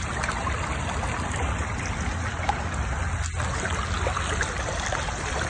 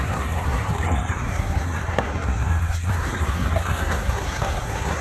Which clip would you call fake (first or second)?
second